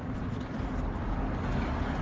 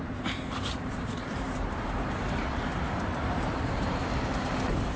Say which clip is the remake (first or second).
second